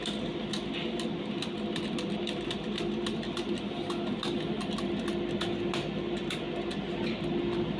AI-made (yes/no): no